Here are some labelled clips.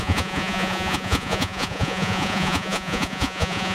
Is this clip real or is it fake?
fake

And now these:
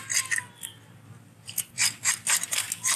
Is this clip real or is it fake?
real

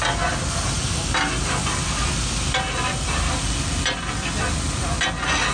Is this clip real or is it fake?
real